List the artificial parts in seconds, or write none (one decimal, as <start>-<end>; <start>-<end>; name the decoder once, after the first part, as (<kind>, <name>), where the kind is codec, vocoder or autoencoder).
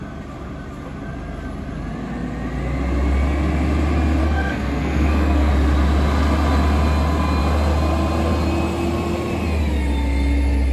4.2-5.5 (codec, SNAC)